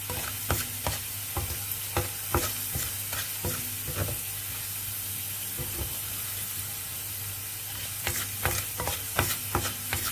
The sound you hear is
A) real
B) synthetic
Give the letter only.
A